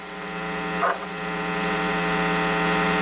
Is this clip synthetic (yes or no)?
yes